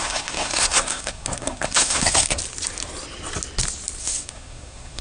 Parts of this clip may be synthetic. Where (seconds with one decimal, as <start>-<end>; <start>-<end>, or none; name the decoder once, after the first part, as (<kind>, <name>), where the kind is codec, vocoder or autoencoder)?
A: 0.0-2.4 (codec, SNAC); 4.0-5.0